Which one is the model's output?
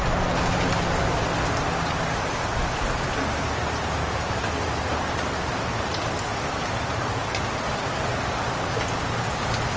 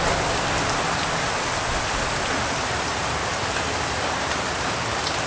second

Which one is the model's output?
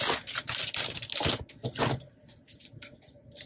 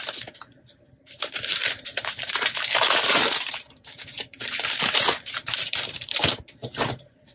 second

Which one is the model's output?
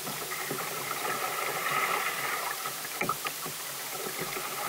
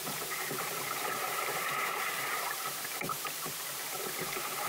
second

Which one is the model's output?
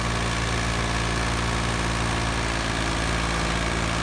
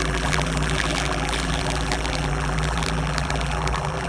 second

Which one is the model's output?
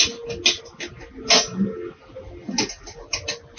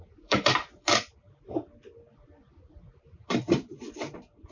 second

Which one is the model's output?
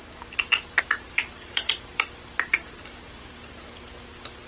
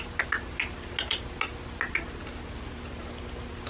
first